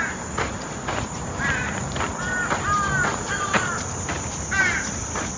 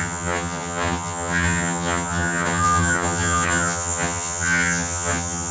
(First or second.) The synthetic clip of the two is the second